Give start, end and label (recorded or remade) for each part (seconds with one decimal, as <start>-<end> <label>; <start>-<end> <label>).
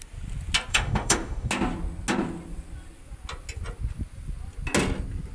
0.0-0.7 recorded; 0.7-1.5 remade; 1.5-5.3 recorded